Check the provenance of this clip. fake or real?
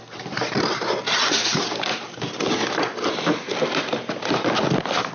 real